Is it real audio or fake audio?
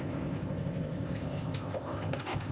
fake